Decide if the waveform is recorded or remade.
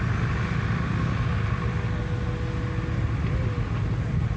recorded